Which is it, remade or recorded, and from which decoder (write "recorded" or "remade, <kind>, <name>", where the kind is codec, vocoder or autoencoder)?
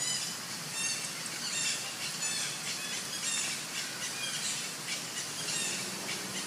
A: recorded